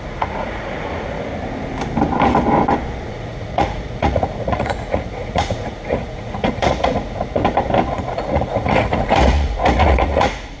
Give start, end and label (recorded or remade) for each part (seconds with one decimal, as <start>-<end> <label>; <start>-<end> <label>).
0.0-1.3 remade; 1.3-3.1 recorded; 3.1-7.4 remade; 7.4-7.9 recorded; 7.9-10.6 remade